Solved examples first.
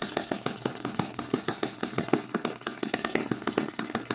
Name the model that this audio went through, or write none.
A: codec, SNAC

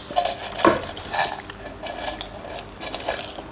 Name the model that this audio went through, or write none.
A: none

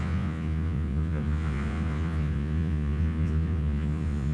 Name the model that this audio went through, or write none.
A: vocoder, Vocos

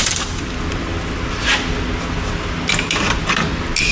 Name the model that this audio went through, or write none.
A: none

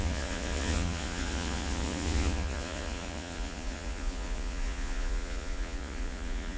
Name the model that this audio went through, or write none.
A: vocoder, Vocos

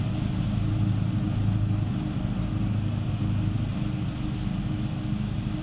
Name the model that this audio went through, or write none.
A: none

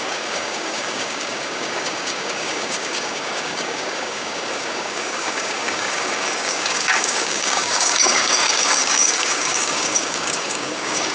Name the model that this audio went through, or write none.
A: codec, DAC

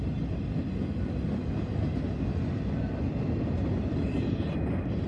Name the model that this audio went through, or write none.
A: none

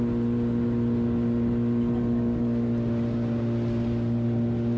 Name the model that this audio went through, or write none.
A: none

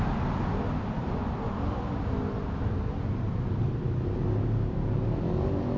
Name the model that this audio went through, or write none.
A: none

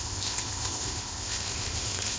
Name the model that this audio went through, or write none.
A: codec, ZipCodec